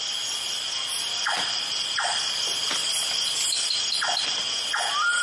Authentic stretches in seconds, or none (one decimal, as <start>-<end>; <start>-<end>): 0.0-5.2

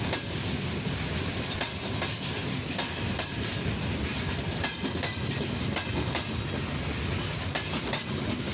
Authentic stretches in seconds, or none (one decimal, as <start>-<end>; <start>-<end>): 0.0-8.5

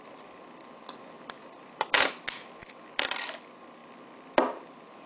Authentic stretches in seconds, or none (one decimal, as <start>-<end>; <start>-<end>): 0.0-5.1

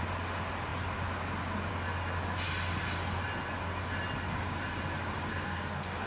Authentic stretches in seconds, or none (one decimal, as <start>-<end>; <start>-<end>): 0.0-5.3

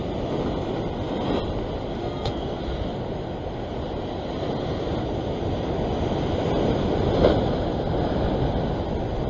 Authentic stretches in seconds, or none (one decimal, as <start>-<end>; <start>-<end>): 0.0-2.0; 2.6-9.3

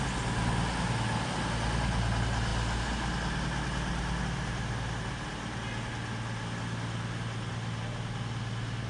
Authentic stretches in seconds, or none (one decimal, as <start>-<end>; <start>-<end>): 0.0-8.9

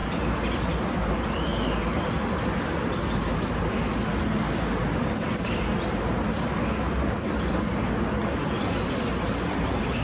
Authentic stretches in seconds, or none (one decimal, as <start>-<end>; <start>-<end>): 0.0-10.0